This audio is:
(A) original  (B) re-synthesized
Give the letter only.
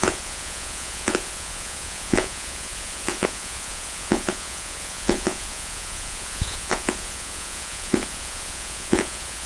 B